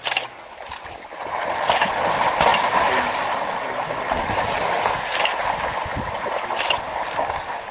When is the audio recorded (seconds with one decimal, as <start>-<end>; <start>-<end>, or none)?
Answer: 0.0-6.9